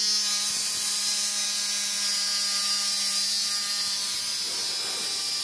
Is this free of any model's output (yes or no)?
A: yes